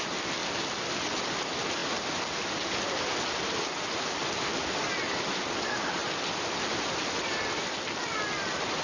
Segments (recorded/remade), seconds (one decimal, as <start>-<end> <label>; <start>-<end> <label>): 0.0-0.4 remade; 0.4-1.2 recorded; 1.2-1.8 remade; 1.8-2.7 recorded; 2.7-8.8 remade